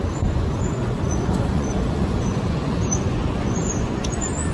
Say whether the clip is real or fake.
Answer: fake